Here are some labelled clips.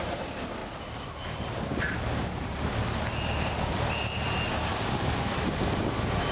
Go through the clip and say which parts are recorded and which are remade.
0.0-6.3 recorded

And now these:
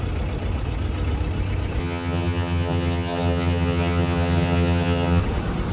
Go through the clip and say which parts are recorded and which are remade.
0.0-1.8 recorded; 1.8-5.2 remade; 5.2-5.7 recorded

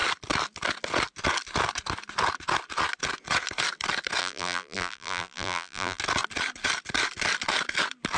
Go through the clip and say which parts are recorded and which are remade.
0.0-4.2 recorded; 4.2-6.0 remade; 6.0-8.2 recorded

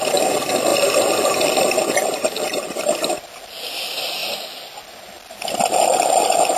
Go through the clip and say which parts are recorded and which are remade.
0.0-6.6 recorded

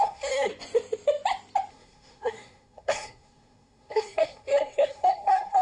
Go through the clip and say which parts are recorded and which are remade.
0.0-0.5 remade; 0.5-1.7 recorded; 1.7-5.6 remade

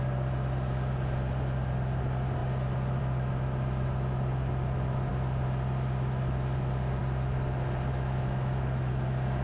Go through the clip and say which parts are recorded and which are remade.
0.0-7.9 recorded; 7.9-8.9 remade; 8.9-9.4 recorded